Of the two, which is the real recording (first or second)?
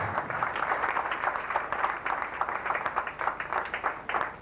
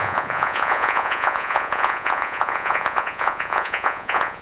first